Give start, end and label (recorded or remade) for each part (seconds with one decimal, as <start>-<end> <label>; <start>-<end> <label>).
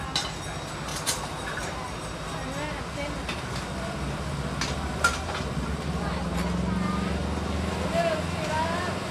0.0-9.1 recorded